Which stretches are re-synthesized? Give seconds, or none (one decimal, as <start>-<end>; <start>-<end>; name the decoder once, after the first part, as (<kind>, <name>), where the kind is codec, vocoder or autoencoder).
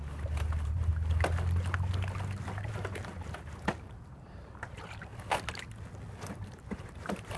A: 0.0-0.9 (vocoder, BigVGAN v2); 2.7-5.1; 6.8-7.4